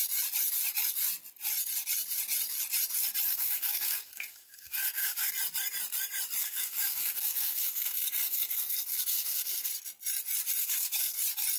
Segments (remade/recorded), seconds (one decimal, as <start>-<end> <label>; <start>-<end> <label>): 0.0-3.3 recorded; 3.3-5.3 remade; 5.3-6.4 recorded; 6.4-9.7 remade; 9.7-10.6 recorded; 10.6-11.2 remade; 11.2-11.6 recorded